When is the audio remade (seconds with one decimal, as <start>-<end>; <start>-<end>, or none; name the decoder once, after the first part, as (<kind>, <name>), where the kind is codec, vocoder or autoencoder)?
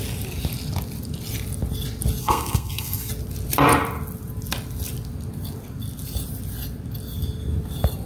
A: 2.2-3.1 (codec, SNAC)